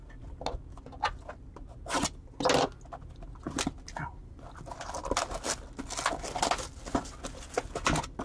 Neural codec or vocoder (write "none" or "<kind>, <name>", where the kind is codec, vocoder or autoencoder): none